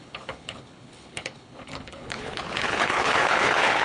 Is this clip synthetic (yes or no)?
yes